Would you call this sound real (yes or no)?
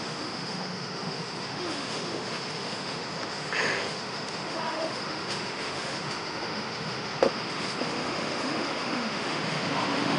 no